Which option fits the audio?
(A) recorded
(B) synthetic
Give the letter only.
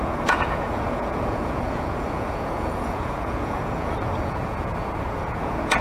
B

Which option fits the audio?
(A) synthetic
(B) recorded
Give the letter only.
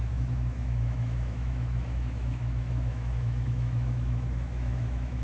A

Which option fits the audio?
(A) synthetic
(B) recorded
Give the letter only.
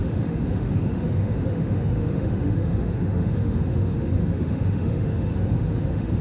A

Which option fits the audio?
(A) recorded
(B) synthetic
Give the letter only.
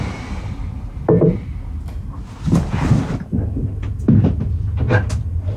A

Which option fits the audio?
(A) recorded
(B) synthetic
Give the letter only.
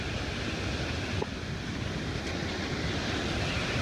A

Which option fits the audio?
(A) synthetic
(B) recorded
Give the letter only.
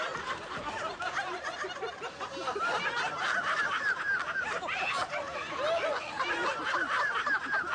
B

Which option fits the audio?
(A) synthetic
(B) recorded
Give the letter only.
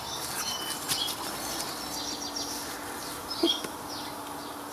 B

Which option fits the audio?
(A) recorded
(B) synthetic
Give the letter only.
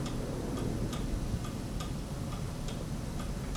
A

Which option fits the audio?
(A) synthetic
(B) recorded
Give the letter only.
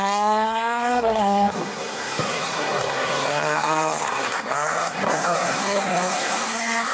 A